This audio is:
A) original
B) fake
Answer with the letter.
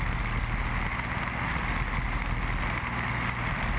A